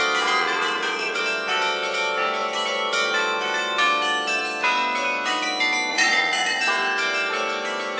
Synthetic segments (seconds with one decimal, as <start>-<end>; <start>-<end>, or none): 0.4-1.2; 5.9-6.6